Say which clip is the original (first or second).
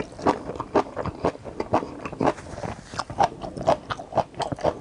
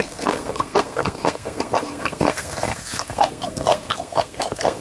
first